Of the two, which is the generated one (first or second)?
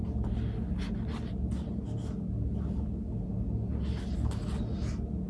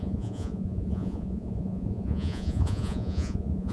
second